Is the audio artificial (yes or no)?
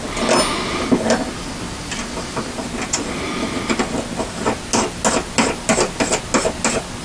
no